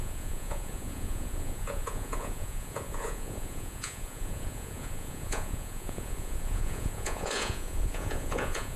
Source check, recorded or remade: remade